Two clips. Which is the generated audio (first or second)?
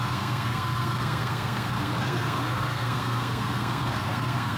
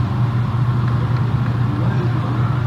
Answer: first